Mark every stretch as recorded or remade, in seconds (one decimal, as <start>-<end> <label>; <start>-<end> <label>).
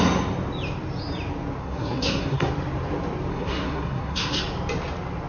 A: 0.0-1.6 recorded; 1.6-2.5 remade; 2.5-3.3 recorded; 3.3-4.4 remade; 4.4-5.3 recorded